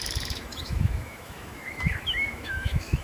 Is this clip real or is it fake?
fake